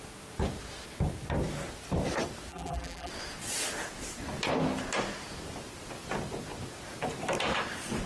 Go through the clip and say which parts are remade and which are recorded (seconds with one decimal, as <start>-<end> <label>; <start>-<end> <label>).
0.0-2.5 recorded; 2.5-3.1 remade; 3.1-8.1 recorded

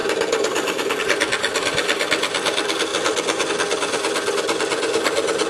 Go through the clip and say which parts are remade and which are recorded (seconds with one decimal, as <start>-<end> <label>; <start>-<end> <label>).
0.0-1.0 remade; 1.0-5.5 recorded

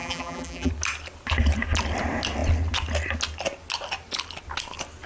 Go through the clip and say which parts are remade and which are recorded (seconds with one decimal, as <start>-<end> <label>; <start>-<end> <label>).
0.0-0.7 remade; 0.7-5.1 recorded

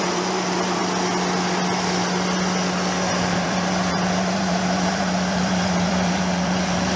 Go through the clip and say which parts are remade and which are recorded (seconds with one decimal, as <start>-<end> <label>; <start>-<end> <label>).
0.0-0.8 remade; 0.8-3.1 recorded; 3.1-7.0 remade

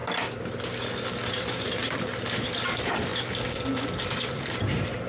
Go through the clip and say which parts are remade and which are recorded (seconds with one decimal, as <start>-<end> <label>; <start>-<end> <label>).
0.0-1.1 recorded; 1.1-3.1 remade; 3.1-4.1 recorded; 4.1-5.1 remade